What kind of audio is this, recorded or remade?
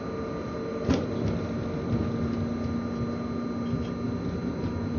recorded